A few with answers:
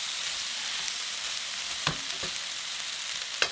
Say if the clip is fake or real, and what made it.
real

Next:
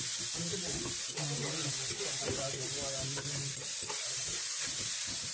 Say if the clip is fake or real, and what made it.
real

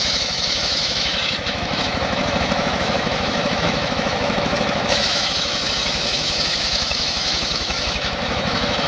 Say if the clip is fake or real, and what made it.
fake, autoencoder, DAC-VAE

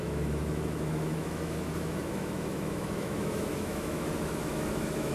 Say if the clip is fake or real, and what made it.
fake, autoencoder, DAC-VAE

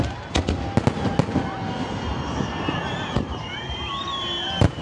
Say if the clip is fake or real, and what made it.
real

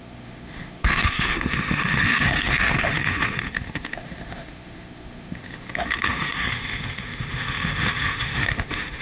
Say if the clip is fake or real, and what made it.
fake, autoencoder, DAC-VAE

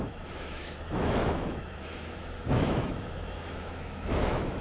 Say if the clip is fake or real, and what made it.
fake, autoencoder, DAC-VAE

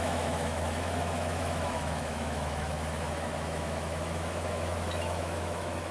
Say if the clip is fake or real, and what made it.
fake, autoencoder, DAC-VAE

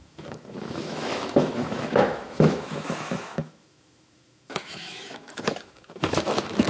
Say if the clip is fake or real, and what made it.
fake, autoencoder, DAC-VAE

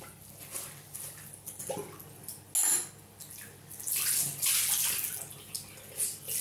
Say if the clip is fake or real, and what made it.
real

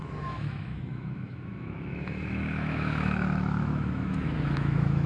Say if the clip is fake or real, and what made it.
fake, autoencoder, DAC-VAE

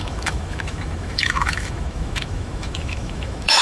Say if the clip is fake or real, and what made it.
fake, autoencoder, DAC-VAE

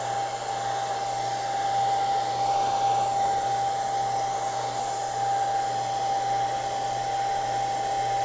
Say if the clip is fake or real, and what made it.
real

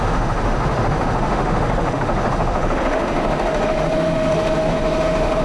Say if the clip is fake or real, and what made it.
fake, autoencoder, DAC-VAE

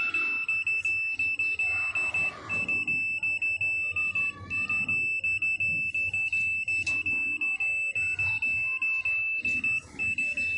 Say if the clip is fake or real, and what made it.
real